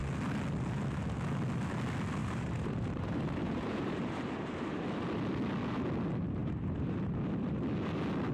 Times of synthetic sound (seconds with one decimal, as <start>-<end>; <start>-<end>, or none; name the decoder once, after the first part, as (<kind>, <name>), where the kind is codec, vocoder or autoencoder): 2.2-4.9 (vocoder, BigVGAN v2); 6.4-7.1